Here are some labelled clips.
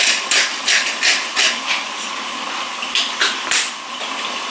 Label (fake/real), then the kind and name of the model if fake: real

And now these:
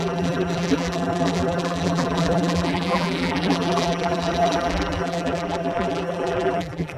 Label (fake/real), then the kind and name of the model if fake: fake, vocoder, BigVGAN v2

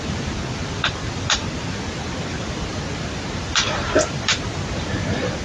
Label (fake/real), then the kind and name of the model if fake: real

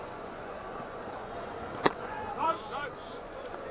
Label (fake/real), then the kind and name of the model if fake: fake, vocoder, Vocos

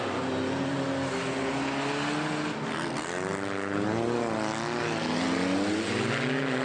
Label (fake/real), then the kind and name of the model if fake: real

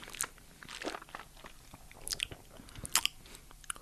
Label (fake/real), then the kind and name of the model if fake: real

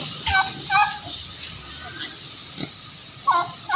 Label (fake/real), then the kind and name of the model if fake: real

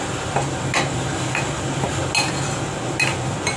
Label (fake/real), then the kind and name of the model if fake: real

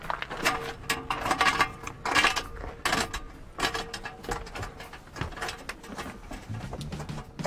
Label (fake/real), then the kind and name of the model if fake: real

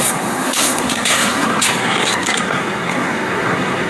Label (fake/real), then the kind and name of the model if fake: fake, codec, SNAC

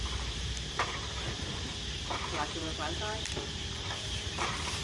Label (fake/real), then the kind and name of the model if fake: fake, vocoder, BigVGAN v2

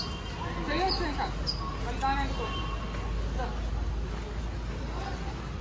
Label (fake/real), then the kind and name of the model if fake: real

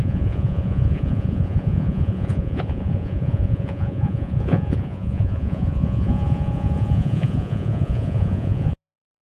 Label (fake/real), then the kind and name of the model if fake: fake, vocoder, Vocos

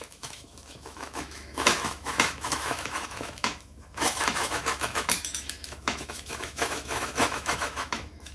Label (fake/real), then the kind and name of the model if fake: fake, autoencoder, DAC-VAE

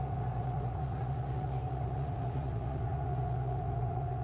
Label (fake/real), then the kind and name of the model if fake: fake, vocoder, Vocos